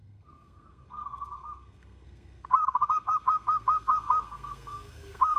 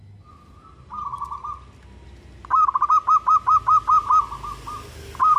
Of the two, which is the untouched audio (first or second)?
second